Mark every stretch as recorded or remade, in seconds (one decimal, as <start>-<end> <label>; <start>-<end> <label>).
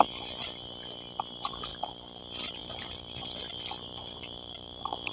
0.0-1.7 recorded; 1.7-2.2 remade; 2.2-2.6 recorded; 2.6-3.4 remade; 3.4-3.9 recorded; 3.9-5.1 remade